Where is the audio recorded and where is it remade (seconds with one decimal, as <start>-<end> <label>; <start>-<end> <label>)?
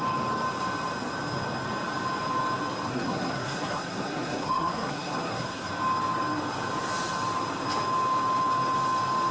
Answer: 0.0-2.9 recorded; 2.9-5.7 remade; 5.7-9.3 recorded